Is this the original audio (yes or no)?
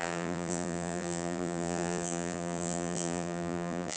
no